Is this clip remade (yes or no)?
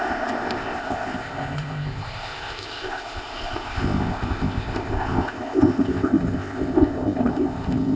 yes